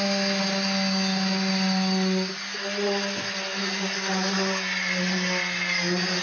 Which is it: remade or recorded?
recorded